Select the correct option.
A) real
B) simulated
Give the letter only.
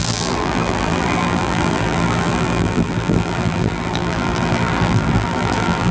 B